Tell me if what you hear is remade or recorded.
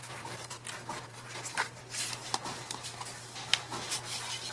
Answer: recorded